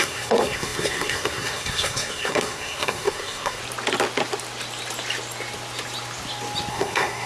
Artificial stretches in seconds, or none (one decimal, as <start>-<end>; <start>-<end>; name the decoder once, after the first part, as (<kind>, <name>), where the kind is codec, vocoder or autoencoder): 0.0-3.6 (codec, SNAC); 6.7-7.3